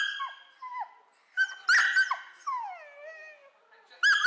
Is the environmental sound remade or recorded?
recorded